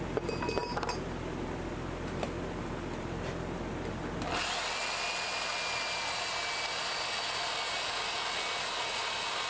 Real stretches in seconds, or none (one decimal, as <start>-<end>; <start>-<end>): 0.0-9.5